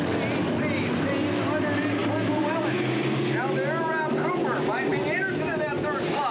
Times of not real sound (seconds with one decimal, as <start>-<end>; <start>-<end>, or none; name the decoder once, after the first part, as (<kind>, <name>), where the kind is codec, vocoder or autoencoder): none